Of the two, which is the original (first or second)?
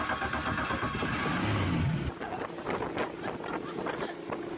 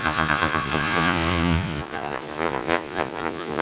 first